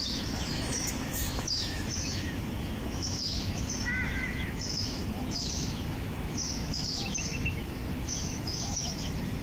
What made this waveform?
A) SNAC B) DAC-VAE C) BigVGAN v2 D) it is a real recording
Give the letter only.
B